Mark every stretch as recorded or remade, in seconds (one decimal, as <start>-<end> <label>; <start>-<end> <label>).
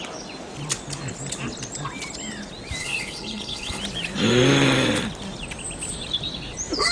0.0-2.8 recorded; 2.8-3.8 remade; 3.8-6.9 recorded